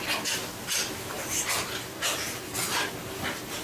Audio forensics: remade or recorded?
recorded